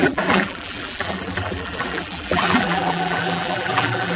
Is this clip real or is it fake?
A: fake